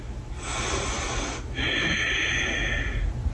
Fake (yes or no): no